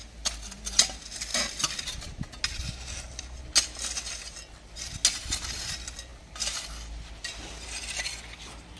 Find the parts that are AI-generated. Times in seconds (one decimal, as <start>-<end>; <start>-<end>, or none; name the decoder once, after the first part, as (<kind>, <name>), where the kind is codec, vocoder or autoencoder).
none